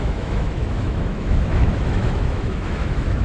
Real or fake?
fake